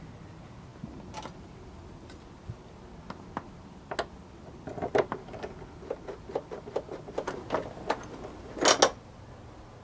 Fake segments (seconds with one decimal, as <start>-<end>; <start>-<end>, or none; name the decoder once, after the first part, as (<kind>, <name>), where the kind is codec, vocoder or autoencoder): none

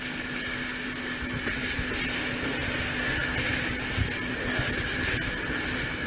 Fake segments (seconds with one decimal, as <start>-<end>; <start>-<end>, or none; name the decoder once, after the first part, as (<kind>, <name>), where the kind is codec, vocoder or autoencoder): none

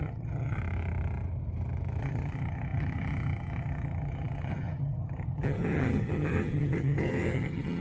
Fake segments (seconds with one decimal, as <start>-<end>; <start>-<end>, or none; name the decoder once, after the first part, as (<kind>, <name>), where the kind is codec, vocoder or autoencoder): 0.0-0.6 (vocoder, HiFi-GAN); 2.0-7.8

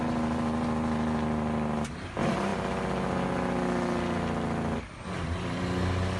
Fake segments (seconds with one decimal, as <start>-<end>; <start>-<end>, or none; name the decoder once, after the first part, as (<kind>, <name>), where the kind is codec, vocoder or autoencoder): none

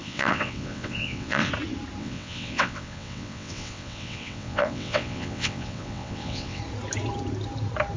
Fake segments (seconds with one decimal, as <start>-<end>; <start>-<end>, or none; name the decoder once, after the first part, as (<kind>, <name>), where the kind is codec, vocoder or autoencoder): 0.0-1.5 (vocoder, WaveNeXt); 2.0-6.6

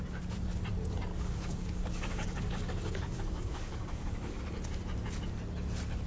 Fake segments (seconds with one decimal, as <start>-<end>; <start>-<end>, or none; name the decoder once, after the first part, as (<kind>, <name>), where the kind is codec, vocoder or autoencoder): 1.1-4.4 (codec, DAC)

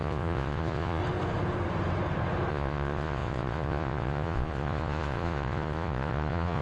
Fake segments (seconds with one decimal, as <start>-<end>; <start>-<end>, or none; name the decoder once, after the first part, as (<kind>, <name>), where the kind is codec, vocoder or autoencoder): 0.0-1.0 (vocoder, Vocos); 2.5-6.6

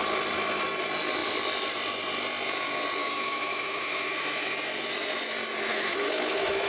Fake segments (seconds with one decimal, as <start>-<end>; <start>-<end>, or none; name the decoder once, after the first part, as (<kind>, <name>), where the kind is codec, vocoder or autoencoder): 3.0-4.1 (autoencoder, DAC-VAE); 5.7-6.7